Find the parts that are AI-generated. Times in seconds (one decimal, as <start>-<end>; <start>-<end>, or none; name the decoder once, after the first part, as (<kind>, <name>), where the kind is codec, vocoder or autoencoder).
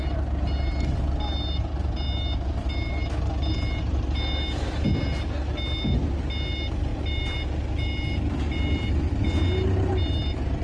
none